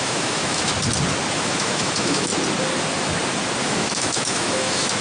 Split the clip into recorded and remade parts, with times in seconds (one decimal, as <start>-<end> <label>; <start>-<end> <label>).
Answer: 0.0-0.7 remade; 0.7-1.3 recorded; 1.3-2.3 remade; 2.3-3.6 recorded; 3.6-5.0 remade